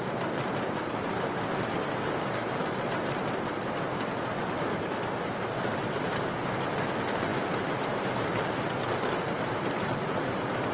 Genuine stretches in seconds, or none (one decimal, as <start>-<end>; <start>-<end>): 2.4-3.4